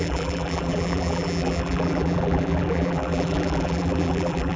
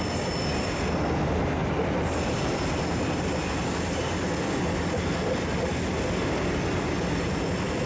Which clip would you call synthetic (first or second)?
first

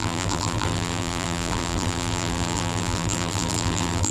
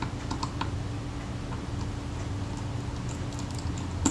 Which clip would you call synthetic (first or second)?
first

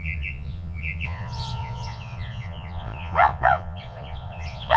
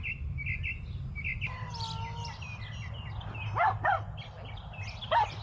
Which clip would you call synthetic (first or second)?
first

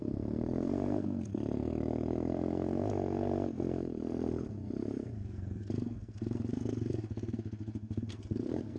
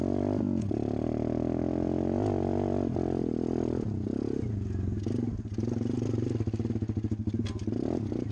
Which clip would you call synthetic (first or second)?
first